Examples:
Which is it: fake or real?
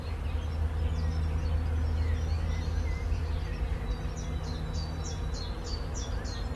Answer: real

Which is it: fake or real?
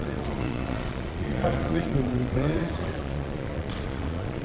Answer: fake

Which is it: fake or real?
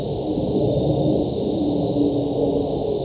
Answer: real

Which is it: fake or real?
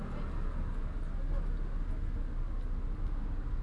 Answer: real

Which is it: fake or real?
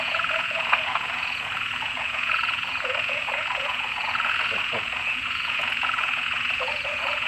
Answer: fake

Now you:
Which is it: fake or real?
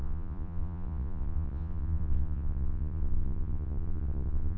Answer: fake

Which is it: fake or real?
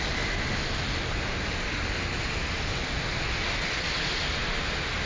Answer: real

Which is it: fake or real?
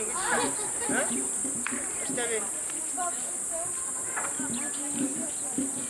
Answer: real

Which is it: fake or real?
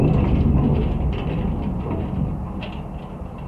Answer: real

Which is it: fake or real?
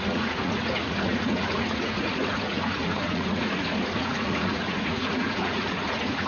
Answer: fake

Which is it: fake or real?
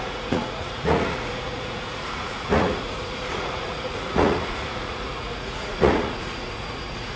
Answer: fake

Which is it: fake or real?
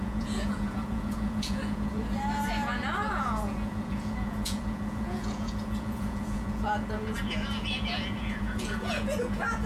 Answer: fake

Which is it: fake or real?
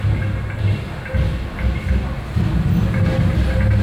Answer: real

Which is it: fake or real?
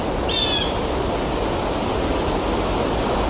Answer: real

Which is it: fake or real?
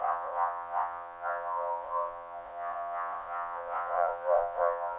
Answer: fake